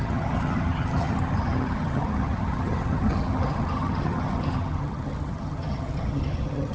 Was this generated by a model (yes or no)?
yes